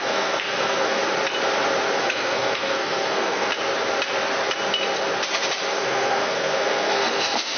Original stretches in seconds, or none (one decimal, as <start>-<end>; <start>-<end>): 1.0-2.0; 3.5-5.7